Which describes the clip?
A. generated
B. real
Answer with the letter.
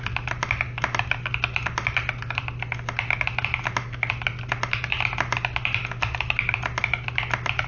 B